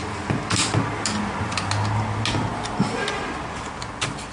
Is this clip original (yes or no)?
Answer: yes